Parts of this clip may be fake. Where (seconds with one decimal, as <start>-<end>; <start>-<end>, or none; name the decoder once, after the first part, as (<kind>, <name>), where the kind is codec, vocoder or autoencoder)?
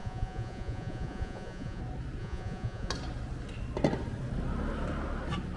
0.0-1.8 (vocoder, Vocos); 2.2-2.9